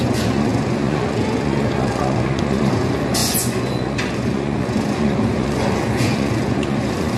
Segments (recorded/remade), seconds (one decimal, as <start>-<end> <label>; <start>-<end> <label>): 0.0-7.2 remade